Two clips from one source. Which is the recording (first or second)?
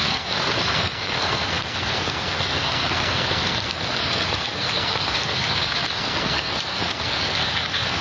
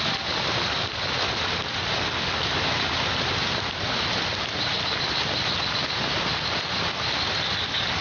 second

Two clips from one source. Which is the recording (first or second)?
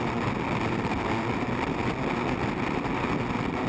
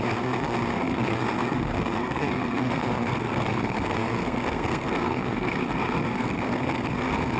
first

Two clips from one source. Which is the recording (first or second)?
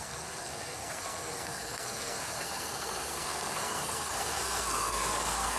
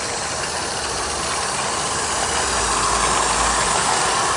second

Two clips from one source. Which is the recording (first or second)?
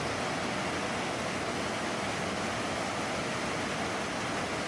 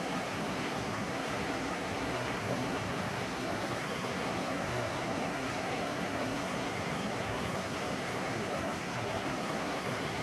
first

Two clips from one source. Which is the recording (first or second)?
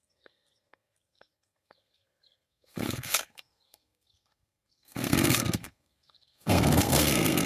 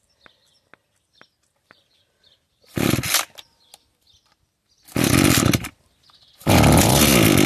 second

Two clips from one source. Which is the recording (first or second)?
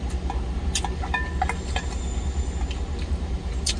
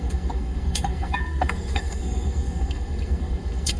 first